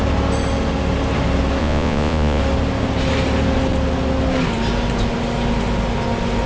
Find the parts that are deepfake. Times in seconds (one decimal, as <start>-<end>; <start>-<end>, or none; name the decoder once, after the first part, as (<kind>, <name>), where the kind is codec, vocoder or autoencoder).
1.6-2.4 (vocoder, Vocos)